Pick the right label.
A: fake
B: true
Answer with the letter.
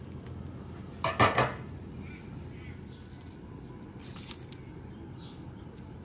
B